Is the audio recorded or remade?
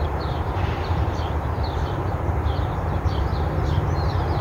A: remade